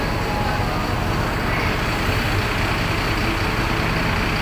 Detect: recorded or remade recorded